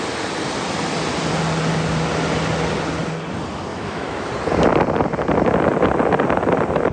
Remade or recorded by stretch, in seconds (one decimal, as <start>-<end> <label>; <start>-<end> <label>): 0.0-3.7 recorded; 3.7-4.3 remade; 4.3-6.9 recorded